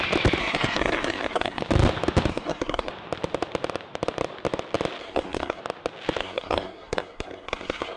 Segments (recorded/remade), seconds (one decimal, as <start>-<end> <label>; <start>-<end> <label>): 0.0-0.4 recorded; 0.4-1.6 remade; 1.6-2.3 recorded; 2.3-2.9 remade; 2.9-5.0 recorded; 5.0-5.6 remade; 5.6-6.2 recorded; 6.2-8.0 remade